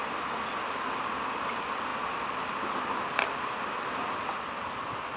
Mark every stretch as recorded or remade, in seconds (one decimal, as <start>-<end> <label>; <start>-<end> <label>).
0.0-5.2 recorded